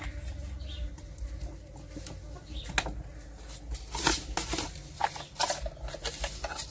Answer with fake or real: real